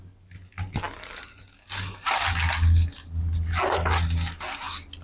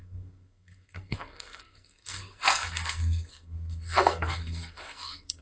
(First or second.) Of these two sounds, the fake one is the second